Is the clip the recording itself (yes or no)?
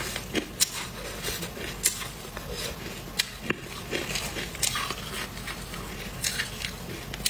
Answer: yes